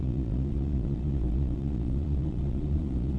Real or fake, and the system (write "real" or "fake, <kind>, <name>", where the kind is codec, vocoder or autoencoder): fake, vocoder, Vocos